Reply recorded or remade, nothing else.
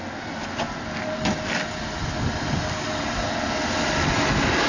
recorded